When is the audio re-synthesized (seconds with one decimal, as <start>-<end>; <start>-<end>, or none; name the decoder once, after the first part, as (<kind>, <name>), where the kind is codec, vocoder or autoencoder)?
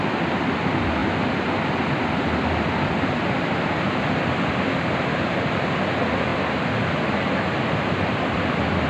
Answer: none